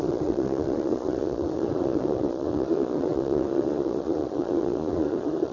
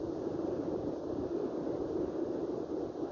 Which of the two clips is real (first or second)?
second